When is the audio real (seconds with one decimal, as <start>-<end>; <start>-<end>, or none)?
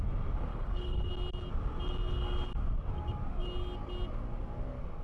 0.0-0.5; 1.1-5.0